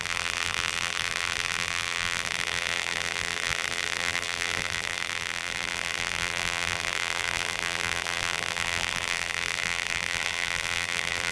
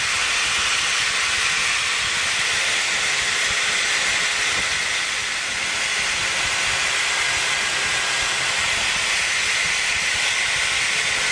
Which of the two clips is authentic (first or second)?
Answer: second